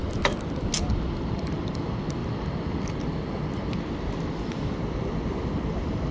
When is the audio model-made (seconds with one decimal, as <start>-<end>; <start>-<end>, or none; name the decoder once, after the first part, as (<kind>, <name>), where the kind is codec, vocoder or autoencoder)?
0.9-2.2 (vocoder, BigVGAN v2)